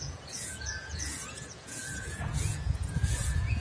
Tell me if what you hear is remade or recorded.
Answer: remade